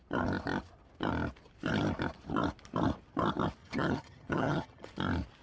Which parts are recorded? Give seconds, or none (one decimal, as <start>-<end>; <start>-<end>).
0.0-3.6; 4.9-5.4